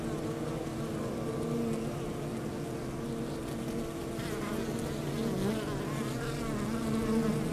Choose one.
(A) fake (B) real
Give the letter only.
B